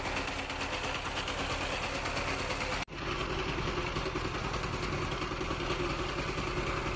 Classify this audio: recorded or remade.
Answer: recorded